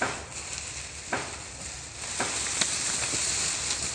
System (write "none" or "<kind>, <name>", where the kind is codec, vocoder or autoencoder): none